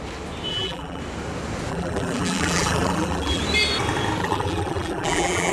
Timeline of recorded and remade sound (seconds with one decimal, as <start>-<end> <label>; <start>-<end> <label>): 0.0-0.5 recorded; 0.5-1.0 remade; 1.0-1.7 recorded; 1.7-3.4 remade; 3.4-4.2 recorded; 4.2-5.5 remade